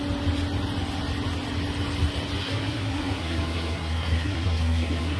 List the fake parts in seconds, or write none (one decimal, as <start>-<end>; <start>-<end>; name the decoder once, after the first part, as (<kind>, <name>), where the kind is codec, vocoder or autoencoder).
2.4-5.2 (codec, SNAC)